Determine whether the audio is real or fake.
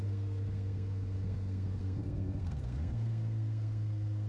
fake